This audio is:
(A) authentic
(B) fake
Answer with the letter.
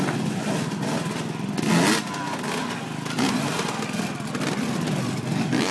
A